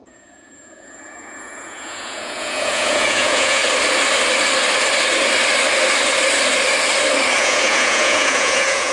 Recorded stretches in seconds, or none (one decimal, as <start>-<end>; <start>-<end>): 3.6-7.4